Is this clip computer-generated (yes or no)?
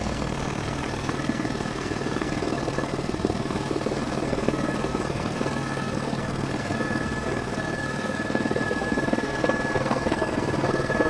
yes